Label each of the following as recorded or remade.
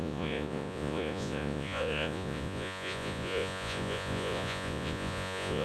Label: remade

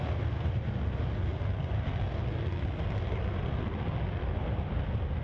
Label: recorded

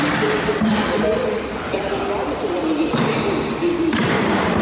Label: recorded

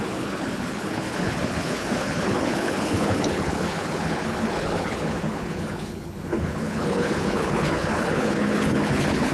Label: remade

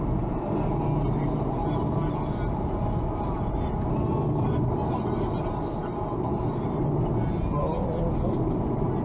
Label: recorded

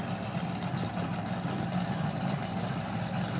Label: recorded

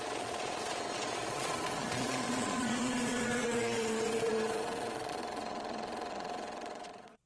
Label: remade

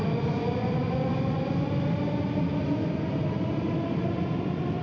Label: recorded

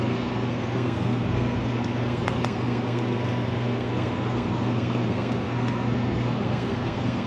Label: remade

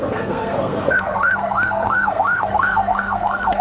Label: remade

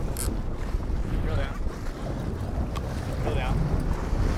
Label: recorded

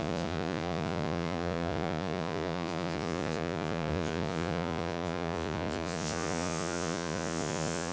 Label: remade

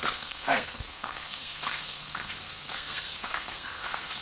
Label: remade